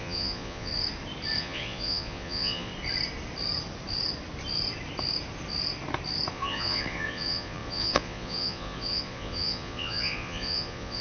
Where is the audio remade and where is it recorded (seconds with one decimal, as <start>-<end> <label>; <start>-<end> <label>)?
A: 0.0-0.7 remade; 0.7-1.4 recorded; 1.4-2.7 remade; 2.7-6.3 recorded; 6.3-11.0 remade

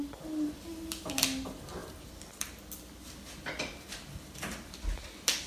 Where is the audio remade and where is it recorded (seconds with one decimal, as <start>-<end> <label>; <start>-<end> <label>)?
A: 0.0-5.5 recorded